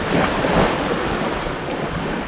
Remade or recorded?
recorded